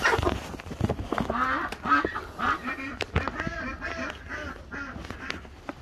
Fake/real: real